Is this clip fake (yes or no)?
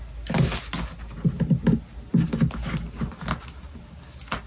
no